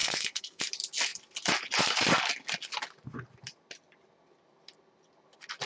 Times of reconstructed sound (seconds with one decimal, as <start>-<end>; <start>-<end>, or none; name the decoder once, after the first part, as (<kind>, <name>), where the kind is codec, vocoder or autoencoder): 0.0-0.6 (codec, SNAC)